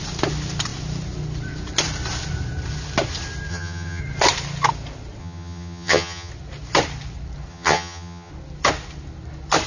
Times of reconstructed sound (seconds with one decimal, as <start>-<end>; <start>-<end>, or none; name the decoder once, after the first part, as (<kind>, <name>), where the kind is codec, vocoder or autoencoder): 3.5-4.0 (vocoder, HiFi-GAN); 5.2-6.3; 7.5-8.3